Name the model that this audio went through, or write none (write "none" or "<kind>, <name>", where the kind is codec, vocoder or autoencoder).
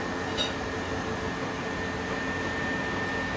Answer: none